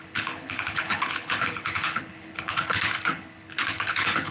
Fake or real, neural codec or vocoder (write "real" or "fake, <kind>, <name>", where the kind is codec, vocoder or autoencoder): fake, codec, HILCodec